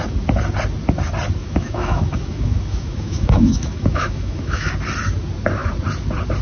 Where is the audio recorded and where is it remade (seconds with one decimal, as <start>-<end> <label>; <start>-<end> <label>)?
0.0-1.4 recorded; 1.4-4.7 remade; 4.7-6.4 recorded